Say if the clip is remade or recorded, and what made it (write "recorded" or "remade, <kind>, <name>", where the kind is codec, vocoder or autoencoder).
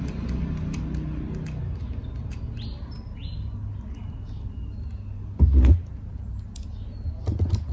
recorded